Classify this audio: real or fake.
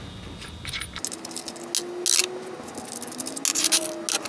real